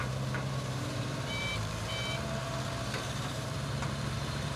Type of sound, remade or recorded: remade